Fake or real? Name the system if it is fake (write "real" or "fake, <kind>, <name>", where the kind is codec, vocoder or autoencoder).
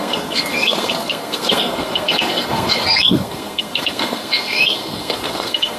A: fake, codec, SNAC